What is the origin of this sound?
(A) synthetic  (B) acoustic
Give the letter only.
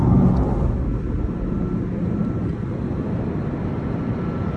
B